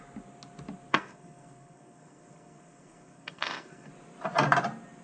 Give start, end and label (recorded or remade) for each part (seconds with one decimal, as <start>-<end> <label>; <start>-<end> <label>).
0.0-0.9 recorded; 0.9-3.9 remade; 3.9-5.0 recorded